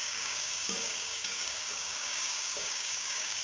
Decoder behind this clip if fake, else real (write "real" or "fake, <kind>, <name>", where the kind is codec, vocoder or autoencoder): fake, codec, DAC